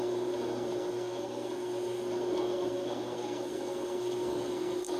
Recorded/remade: remade